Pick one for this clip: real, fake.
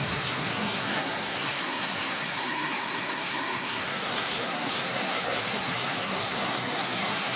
fake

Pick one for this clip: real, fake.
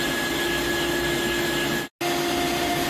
real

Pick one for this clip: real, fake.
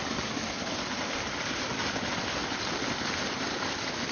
real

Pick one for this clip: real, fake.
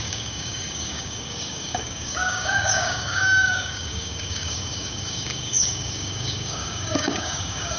fake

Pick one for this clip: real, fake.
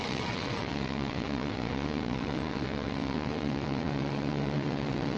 fake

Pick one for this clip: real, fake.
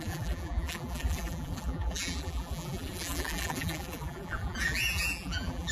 fake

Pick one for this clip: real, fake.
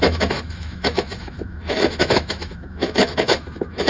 fake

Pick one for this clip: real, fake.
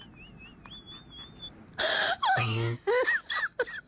real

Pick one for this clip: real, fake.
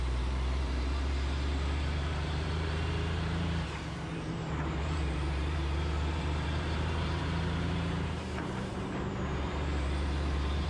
fake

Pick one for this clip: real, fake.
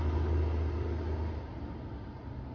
real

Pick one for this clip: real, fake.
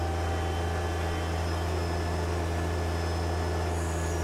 real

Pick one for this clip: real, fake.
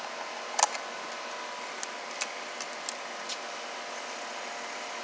real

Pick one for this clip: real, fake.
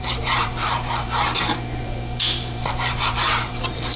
fake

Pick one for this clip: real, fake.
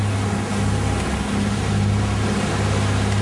real